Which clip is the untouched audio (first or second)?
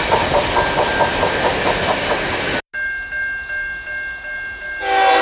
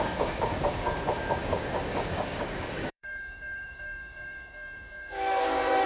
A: first